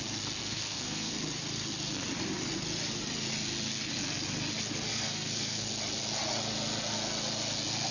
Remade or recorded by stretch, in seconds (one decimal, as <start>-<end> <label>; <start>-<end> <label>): 0.0-0.4 recorded; 0.4-1.1 remade; 1.1-4.9 recorded; 4.9-5.7 remade; 5.7-7.9 recorded